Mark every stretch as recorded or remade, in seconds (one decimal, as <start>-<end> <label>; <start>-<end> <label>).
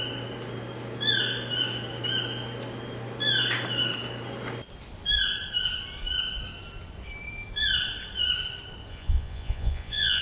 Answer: 0.0-8.9 recorded; 8.9-10.2 remade